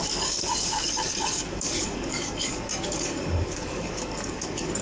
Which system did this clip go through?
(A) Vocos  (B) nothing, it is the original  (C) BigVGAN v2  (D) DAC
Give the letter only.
D